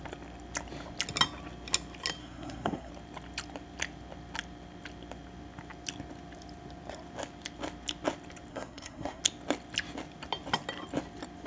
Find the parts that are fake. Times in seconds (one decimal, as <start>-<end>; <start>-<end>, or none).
2.2-2.9; 8.5-9.2